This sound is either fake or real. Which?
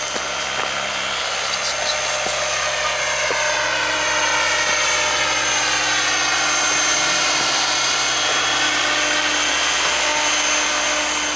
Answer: real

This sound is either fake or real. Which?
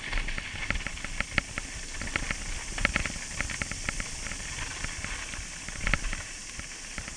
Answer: real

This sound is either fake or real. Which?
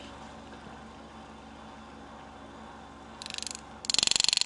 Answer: real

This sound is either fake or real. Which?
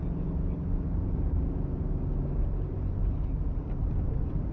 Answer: real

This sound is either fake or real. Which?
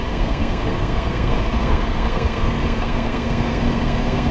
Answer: fake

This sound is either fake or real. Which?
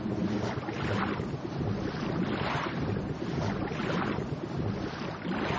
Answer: real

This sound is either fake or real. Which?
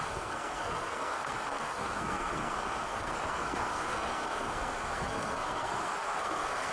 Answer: fake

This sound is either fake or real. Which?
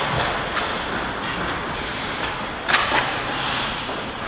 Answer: real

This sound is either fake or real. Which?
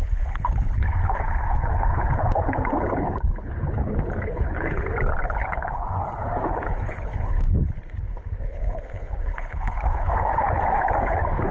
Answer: fake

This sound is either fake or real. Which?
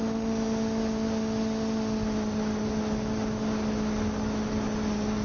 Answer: real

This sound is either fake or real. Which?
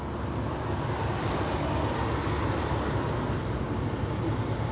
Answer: real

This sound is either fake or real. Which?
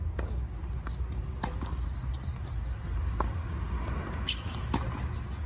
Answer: real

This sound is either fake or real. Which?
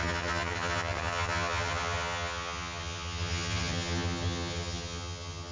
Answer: fake